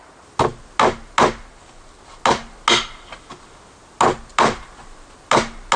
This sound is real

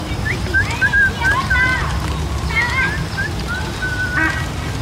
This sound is real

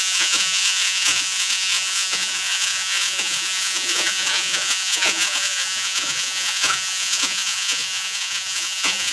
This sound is fake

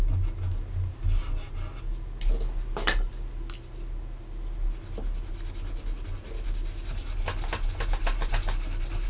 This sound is real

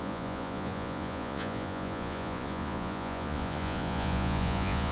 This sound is fake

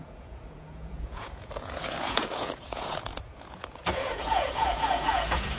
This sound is fake